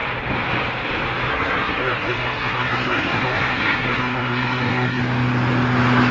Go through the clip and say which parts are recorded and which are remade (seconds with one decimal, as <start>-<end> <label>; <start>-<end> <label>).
0.0-1.3 recorded; 1.3-5.0 remade; 5.0-6.1 recorded